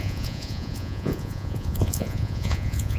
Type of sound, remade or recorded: remade